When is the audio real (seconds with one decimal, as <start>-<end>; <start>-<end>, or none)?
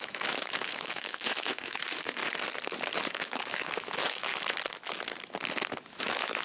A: 2.2-3.1; 4.3-6.0